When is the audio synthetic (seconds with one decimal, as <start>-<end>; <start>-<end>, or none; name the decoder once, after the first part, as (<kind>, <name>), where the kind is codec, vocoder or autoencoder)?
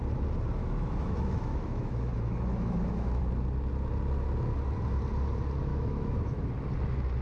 0.6-3.2 (autoencoder, DAC-VAE); 5.7-6.5